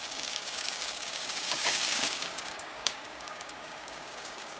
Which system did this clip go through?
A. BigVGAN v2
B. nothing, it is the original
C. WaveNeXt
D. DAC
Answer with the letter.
D